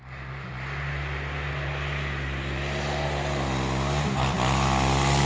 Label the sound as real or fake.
real